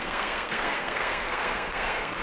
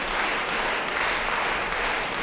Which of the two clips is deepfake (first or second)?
first